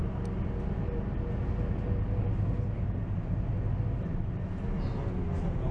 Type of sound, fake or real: real